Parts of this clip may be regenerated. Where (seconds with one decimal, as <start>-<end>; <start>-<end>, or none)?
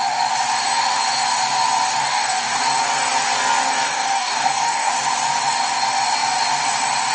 2.0-2.6; 3.7-4.9